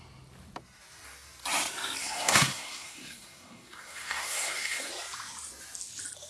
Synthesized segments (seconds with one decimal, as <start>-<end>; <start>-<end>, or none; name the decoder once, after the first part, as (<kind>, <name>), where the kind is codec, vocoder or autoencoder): 2.0-4.9 (codec, SNAC)